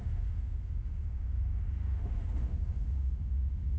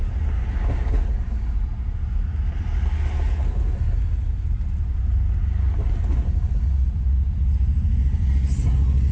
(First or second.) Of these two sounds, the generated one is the first